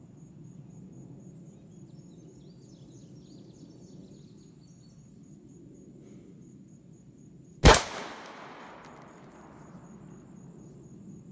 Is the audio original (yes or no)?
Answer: yes